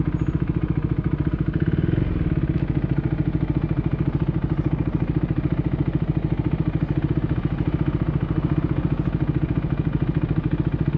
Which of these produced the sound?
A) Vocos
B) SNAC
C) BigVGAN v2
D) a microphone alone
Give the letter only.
D